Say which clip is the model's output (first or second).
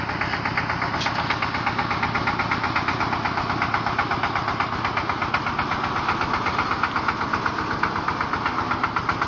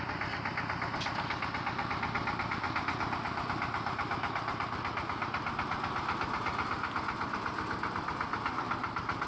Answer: second